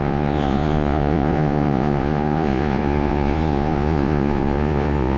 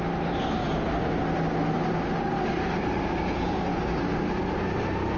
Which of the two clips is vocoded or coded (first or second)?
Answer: first